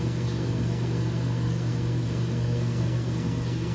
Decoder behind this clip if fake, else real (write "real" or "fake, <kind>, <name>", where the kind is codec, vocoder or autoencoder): fake, codec, SNAC